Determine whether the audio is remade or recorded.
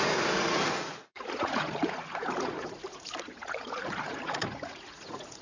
remade